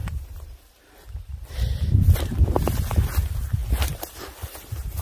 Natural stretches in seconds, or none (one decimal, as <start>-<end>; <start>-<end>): 0.0-5.0